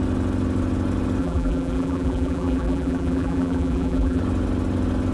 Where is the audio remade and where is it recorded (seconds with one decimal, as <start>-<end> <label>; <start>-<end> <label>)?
0.0-1.2 recorded; 1.2-4.2 remade; 4.2-5.1 recorded